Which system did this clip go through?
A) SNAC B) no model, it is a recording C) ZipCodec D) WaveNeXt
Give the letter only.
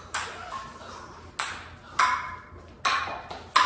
B